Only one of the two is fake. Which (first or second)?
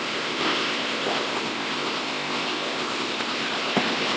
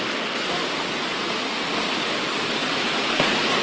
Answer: first